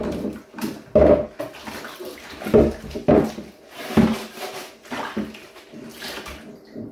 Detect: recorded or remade recorded